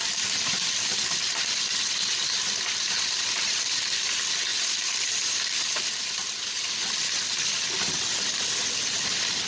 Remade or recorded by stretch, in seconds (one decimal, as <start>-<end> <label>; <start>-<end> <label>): 0.0-4.5 recorded; 4.5-5.8 remade; 5.8-7.0 recorded; 7.0-8.1 remade; 8.1-9.5 recorded